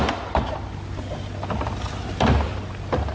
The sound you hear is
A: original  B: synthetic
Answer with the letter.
A